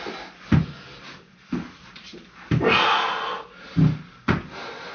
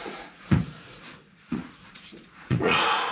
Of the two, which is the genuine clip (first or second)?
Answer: first